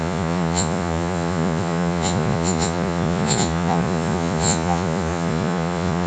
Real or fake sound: fake